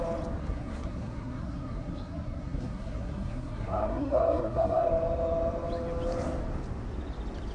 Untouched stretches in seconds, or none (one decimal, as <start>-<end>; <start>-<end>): 0.0-0.4; 4.9-7.5